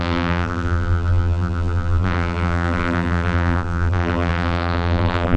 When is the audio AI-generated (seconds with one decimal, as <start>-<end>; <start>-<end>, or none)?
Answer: 0.0-5.4